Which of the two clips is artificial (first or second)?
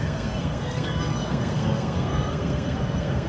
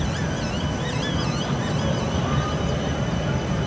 first